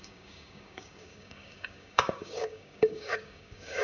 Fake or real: fake